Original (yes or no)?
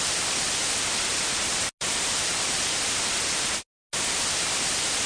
yes